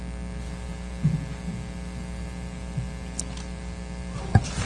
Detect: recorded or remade recorded